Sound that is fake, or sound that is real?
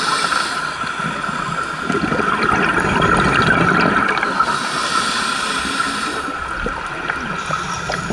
real